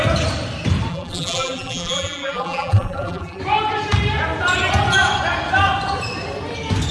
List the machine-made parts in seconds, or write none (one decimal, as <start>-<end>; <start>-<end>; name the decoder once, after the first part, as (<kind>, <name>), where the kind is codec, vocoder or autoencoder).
0.9-3.4 (vocoder, BigVGAN v2)